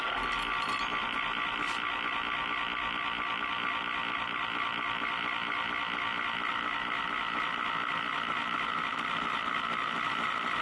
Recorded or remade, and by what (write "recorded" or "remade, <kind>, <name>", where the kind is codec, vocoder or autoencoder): recorded